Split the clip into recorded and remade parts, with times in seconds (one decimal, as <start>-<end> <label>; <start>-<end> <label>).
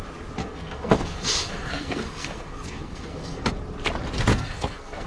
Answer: 0.0-0.4 recorded; 0.4-3.5 remade; 3.5-4.3 recorded; 4.3-5.1 remade